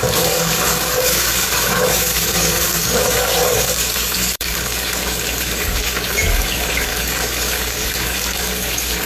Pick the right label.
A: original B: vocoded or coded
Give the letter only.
B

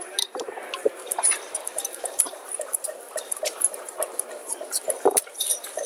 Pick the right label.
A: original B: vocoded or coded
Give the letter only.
B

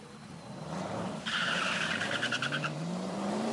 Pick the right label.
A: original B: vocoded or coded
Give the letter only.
B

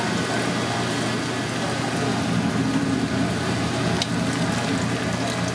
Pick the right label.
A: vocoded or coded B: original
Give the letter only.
B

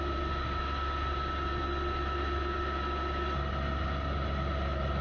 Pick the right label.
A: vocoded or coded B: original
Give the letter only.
B